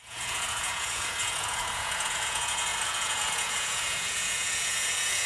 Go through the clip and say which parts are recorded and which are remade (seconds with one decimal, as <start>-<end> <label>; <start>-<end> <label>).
0.0-5.3 remade